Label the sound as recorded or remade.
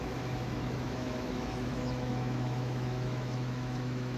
remade